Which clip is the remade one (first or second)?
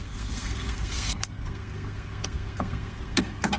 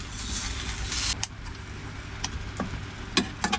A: first